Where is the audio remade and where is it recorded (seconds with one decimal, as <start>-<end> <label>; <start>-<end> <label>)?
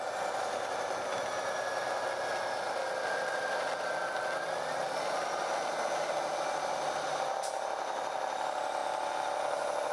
0.0-9.9 recorded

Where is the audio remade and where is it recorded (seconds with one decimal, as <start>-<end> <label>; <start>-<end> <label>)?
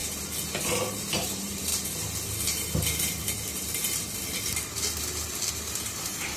0.0-0.6 recorded; 0.6-1.7 remade; 1.7-5.5 recorded; 5.5-6.4 remade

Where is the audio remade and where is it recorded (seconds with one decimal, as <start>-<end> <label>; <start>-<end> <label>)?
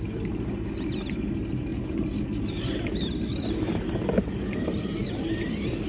0.0-5.9 recorded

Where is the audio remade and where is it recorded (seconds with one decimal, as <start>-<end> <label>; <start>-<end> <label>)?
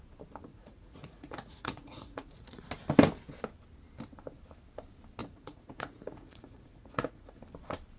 0.0-0.5 recorded; 0.5-2.6 remade; 2.6-5.2 recorded; 5.2-7.4 remade; 7.4-8.0 recorded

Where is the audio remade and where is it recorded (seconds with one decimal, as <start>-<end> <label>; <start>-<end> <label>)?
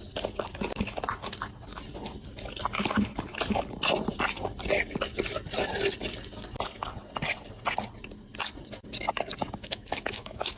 0.0-9.6 recorded; 9.6-10.6 remade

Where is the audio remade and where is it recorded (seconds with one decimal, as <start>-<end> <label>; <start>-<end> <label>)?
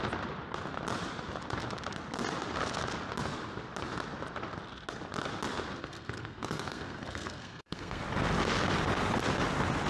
0.0-5.8 recorded; 5.8-8.0 remade; 8.0-9.9 recorded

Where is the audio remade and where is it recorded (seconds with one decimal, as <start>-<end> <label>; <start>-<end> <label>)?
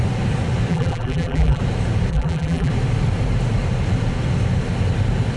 0.0-0.7 recorded; 0.7-1.6 remade; 1.6-2.1 recorded; 2.1-2.7 remade; 2.7-5.4 recorded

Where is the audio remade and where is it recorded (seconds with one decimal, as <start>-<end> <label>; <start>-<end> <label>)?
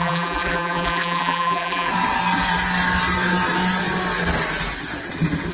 0.0-1.9 remade; 1.9-5.5 recorded